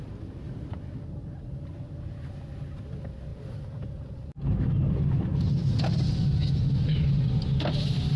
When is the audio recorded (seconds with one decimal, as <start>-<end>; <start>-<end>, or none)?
0.0-3.3; 4.4-8.2